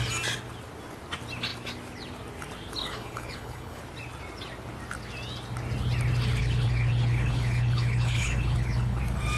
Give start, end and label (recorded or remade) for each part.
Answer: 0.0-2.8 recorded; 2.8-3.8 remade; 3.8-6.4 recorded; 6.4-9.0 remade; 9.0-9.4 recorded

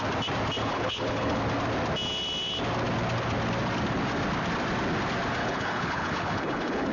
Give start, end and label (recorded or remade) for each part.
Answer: 0.0-0.6 recorded; 0.6-1.4 remade; 1.4-5.4 recorded; 5.4-6.9 remade

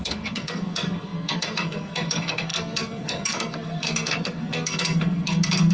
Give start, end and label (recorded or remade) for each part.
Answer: 0.0-5.7 remade